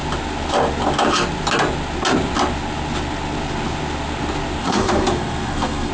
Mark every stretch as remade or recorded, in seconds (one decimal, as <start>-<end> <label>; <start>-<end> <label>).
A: 0.0-4.6 recorded; 4.6-5.9 remade